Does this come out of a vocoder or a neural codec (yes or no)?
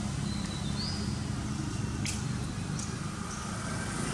no